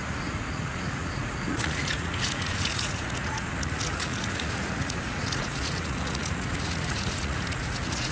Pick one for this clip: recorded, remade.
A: remade